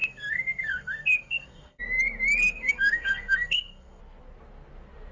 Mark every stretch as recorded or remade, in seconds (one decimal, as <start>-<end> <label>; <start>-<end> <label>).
0.0-1.8 remade; 1.8-2.4 recorded; 2.4-4.0 remade; 4.0-5.1 recorded

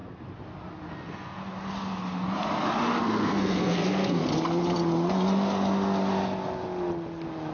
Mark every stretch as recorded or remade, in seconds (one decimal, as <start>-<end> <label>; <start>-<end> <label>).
0.0-0.9 recorded; 0.9-1.4 remade; 1.4-3.0 recorded; 3.0-4.2 remade; 4.2-7.5 recorded

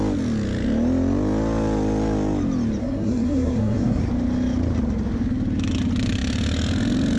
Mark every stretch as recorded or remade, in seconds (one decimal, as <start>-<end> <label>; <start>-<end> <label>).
0.0-2.8 recorded; 2.8-4.0 remade; 4.0-7.2 recorded

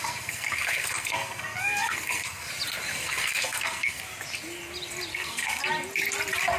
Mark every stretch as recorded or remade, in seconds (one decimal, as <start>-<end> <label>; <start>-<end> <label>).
0.0-2.5 remade; 2.5-2.9 recorded; 2.9-4.0 remade; 4.0-5.1 recorded; 5.1-5.6 remade; 5.6-6.6 recorded

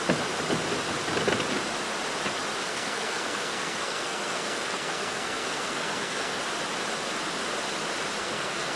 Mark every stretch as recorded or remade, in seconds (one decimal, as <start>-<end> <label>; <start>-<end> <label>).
0.0-2.7 recorded; 2.7-6.4 remade; 6.4-8.2 recorded; 8.2-8.8 remade

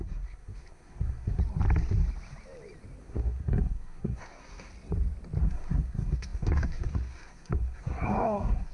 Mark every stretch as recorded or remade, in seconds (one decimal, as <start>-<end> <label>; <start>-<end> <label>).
0.0-1.4 remade; 1.4-3.0 recorded; 3.0-4.7 remade; 4.7-5.4 recorded; 5.4-8.7 remade

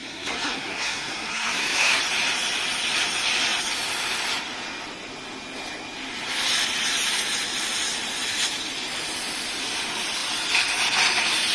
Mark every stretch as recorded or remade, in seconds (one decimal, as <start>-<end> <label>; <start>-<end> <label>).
0.0-2.0 remade; 2.0-11.5 recorded